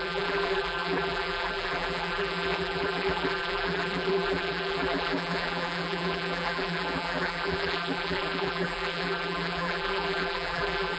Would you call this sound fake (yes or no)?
yes